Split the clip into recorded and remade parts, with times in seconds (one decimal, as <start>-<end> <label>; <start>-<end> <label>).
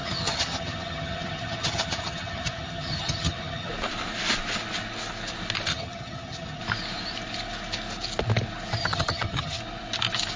0.0-3.7 remade; 3.7-5.7 recorded; 5.7-6.6 remade; 6.6-8.8 recorded; 8.8-9.6 remade; 9.6-10.4 recorded